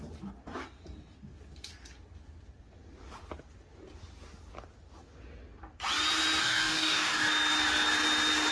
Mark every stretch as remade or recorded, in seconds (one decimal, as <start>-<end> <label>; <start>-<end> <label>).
0.0-6.4 recorded; 6.4-7.3 remade; 7.3-8.5 recorded